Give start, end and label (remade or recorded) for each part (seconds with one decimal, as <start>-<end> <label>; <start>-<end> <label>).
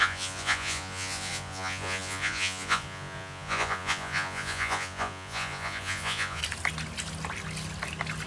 0.0-6.4 remade; 6.4-8.3 recorded